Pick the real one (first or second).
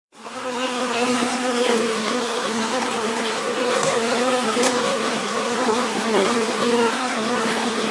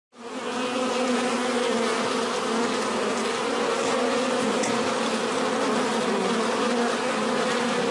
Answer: second